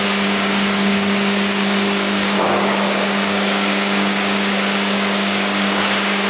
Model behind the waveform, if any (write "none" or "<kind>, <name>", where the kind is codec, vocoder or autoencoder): codec, DAC